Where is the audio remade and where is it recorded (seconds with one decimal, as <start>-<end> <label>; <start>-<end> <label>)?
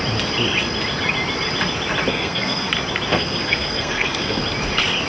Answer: 0.0-2.1 recorded; 2.1-2.7 remade; 2.7-3.1 recorded; 3.1-4.4 remade; 4.4-5.1 recorded